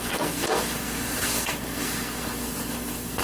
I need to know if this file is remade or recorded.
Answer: remade